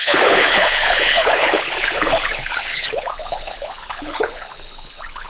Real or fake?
fake